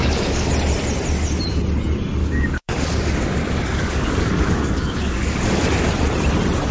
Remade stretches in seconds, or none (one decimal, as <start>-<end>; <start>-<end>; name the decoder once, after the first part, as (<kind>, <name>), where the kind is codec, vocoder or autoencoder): 0.0-0.5 (codec, DAC); 2.2-5.9